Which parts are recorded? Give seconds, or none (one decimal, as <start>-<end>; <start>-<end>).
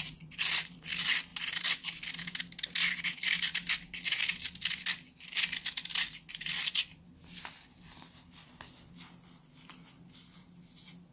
0.0-11.1